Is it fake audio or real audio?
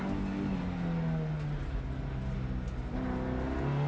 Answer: real